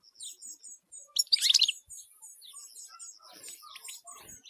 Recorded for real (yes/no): yes